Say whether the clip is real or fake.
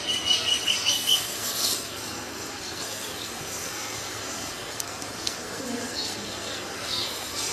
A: fake